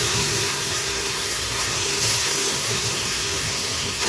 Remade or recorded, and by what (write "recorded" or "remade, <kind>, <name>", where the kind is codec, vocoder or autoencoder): remade, codec, SNAC